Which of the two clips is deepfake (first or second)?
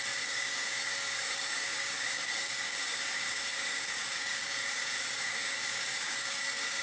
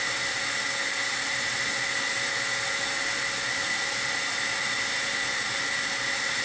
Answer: first